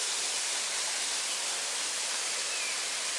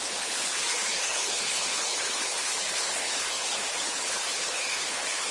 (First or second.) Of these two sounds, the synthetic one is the second